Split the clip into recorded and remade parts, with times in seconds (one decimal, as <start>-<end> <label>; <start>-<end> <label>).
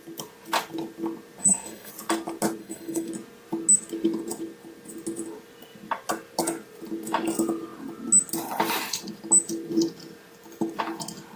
0.0-1.4 recorded; 1.4-1.9 remade; 1.9-2.6 recorded; 2.6-3.1 remade; 3.1-11.4 recorded